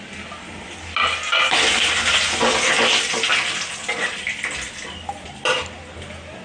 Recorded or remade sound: recorded